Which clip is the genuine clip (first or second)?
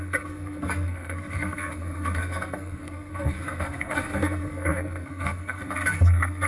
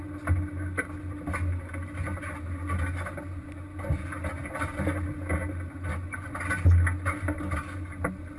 second